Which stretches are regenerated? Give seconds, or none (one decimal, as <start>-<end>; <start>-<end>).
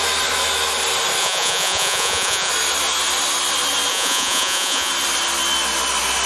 1.2-2.5; 3.9-4.9